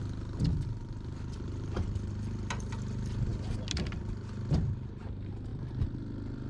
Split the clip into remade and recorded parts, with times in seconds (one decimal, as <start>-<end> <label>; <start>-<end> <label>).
0.0-6.5 recorded